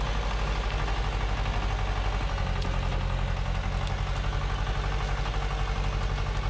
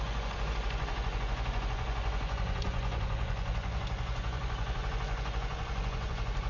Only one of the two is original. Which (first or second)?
first